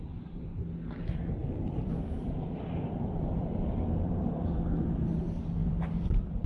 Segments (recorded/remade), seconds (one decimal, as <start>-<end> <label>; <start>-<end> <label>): 0.0-1.4 recorded; 1.4-3.7 remade; 3.7-5.6 recorded; 5.6-6.5 remade